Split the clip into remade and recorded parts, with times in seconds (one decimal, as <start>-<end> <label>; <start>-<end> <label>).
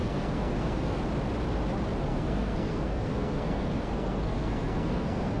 0.0-1.0 remade; 1.0-2.1 recorded; 2.1-5.4 remade